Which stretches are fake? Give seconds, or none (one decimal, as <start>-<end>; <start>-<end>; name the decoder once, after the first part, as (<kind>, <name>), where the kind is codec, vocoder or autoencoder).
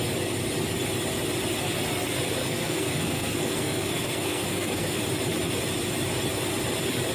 2.4-5.0 (codec, SNAC)